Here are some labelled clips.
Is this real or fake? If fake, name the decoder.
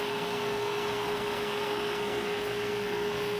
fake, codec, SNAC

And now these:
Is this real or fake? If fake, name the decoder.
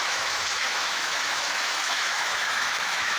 fake, autoencoder, DAC-VAE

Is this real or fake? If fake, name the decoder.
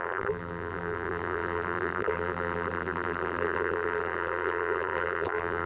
fake, vocoder, BigVGAN v2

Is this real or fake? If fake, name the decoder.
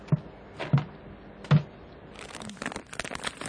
real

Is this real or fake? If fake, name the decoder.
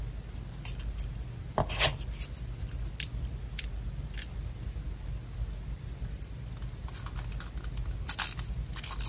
real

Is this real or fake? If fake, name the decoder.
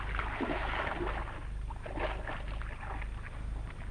real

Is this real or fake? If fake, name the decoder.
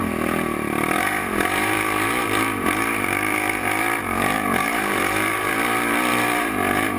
fake, vocoder, BigVGAN v2